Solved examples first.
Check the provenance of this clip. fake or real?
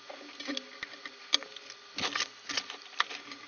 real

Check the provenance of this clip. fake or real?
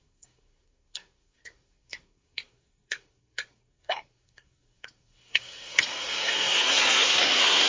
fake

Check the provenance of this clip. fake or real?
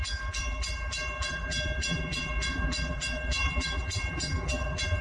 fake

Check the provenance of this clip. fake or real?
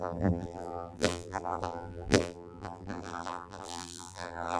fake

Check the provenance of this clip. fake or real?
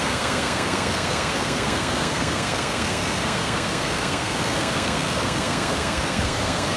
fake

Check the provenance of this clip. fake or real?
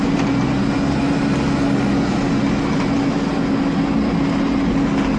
real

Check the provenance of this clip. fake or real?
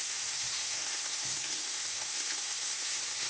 fake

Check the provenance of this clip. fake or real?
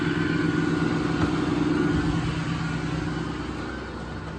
real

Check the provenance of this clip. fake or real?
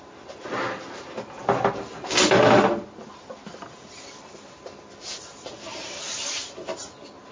real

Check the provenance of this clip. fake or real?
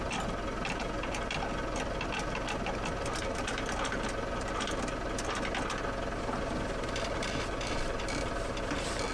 real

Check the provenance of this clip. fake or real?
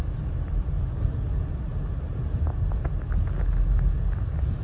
real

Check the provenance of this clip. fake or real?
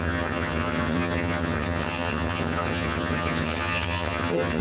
fake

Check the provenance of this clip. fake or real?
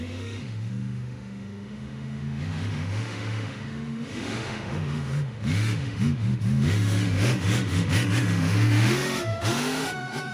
fake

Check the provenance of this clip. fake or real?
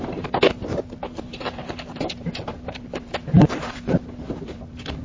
fake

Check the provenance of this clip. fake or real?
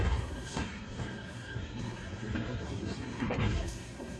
fake